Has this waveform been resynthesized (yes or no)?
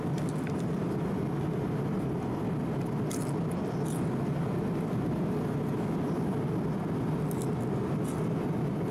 no